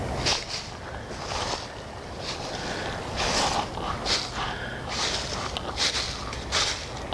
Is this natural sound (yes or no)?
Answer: yes